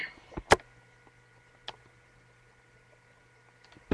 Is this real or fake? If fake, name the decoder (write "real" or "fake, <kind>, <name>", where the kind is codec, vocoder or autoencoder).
real